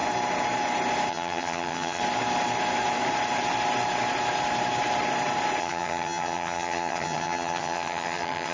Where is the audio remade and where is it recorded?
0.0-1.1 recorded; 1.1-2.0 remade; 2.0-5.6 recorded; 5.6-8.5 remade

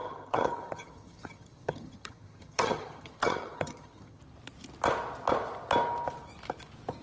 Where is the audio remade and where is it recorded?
0.0-4.2 remade; 4.2-7.0 recorded

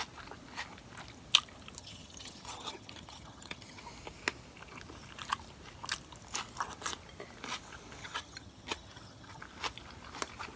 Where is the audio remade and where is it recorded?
0.0-1.8 recorded; 1.8-3.8 remade; 3.8-8.0 recorded; 8.0-9.4 remade; 9.4-10.6 recorded

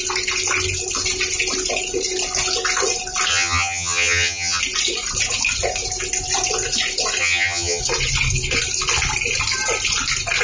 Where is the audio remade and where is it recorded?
0.0-3.3 recorded; 3.3-4.6 remade; 4.6-7.2 recorded; 7.2-7.8 remade; 7.8-10.4 recorded

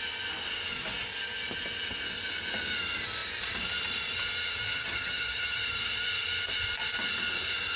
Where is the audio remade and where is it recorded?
0.0-4.7 recorded; 4.7-5.7 remade; 5.7-7.8 recorded

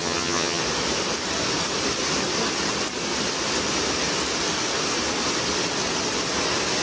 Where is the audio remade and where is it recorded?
0.0-0.6 remade; 0.6-6.8 recorded